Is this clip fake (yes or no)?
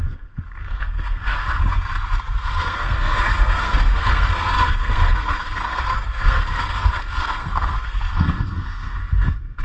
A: yes